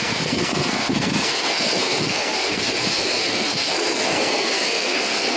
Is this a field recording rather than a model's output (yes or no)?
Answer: no